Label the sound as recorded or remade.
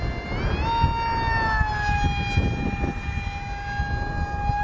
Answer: recorded